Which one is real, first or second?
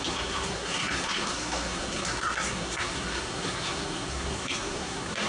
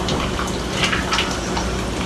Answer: second